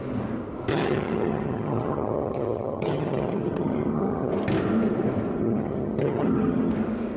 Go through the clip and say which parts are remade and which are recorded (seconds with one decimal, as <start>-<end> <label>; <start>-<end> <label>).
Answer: 0.0-0.7 recorded; 0.7-4.3 remade; 4.3-5.4 recorded; 5.4-6.7 remade; 6.7-7.2 recorded